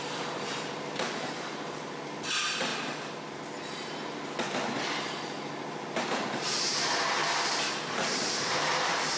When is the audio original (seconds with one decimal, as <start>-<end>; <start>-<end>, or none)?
2.7-5.2; 7.2-7.9

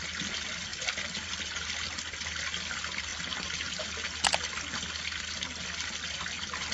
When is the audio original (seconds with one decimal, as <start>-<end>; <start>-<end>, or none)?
0.0-6.7